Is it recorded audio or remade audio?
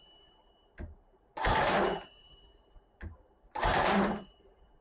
remade